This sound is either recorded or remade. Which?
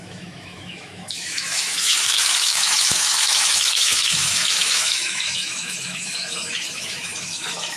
remade